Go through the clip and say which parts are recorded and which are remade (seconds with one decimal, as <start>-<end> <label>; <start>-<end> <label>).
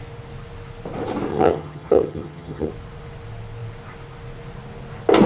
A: 0.0-1.3 recorded; 1.3-2.7 remade; 2.7-5.3 recorded